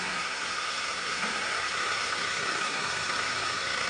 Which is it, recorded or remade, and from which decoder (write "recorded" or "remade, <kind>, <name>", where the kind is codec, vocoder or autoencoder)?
remade, codec, SNAC